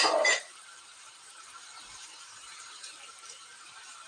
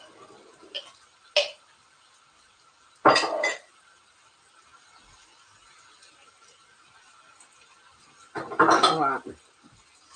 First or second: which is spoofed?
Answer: first